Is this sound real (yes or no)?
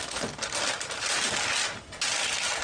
yes